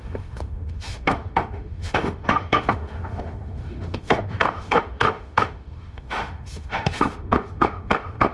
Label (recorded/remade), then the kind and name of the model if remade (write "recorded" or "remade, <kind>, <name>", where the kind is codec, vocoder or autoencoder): remade, autoencoder, DAC-VAE